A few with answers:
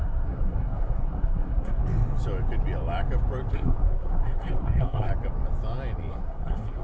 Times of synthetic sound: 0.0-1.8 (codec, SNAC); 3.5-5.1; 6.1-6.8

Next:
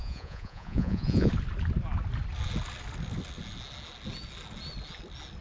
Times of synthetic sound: 0.0-1.3 (vocoder, Vocos)

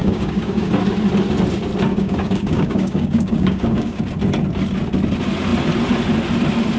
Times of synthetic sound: 0.0-0.7 (codec, DAC); 1.9-4.0

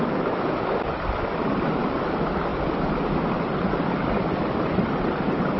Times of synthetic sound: none

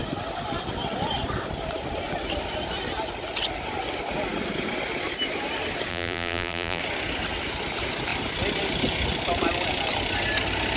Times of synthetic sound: 5.9-6.8 (vocoder, BigVGAN v2)